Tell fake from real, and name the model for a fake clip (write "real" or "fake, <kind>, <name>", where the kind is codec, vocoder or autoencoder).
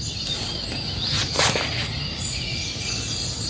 real